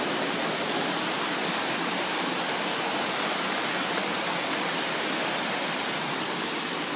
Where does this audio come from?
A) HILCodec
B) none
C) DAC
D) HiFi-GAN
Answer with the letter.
B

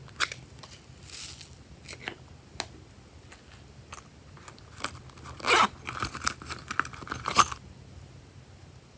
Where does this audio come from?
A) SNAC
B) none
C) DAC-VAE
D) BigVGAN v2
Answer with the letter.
B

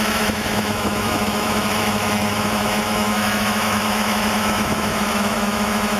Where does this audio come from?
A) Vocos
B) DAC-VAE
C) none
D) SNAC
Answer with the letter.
B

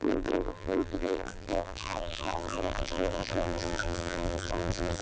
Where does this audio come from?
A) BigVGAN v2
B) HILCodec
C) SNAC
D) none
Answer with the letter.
A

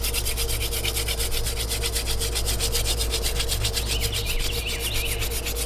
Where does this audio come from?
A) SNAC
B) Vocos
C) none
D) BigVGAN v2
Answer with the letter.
C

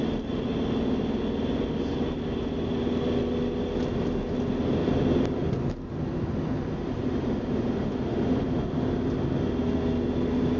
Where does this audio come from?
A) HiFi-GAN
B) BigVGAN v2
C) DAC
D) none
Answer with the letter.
D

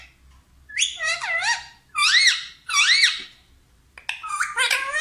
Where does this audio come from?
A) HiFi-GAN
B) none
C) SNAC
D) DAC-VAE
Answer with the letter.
B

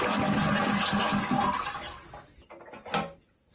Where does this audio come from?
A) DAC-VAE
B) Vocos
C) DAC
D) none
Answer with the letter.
D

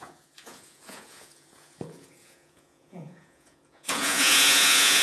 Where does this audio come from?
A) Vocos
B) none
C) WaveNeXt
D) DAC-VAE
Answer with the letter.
A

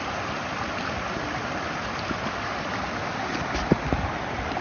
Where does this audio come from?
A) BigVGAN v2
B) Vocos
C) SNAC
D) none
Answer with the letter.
D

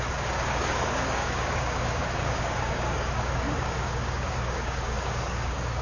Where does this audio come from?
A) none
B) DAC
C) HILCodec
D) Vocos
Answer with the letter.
B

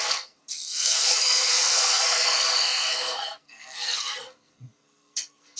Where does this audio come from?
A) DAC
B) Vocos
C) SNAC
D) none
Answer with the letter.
C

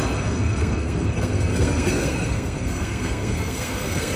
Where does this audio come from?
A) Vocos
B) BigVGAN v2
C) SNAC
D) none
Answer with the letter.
C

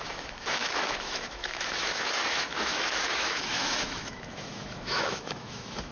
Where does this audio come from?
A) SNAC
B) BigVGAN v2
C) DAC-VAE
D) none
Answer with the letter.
C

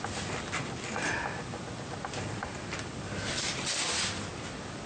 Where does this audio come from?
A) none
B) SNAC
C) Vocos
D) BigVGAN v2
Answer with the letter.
A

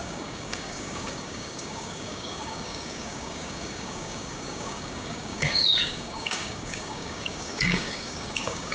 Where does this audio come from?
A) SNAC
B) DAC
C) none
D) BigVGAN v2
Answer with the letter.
B